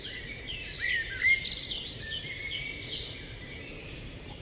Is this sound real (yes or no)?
no